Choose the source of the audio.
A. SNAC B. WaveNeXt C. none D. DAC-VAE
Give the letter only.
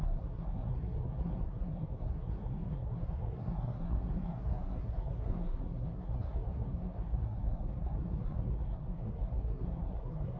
A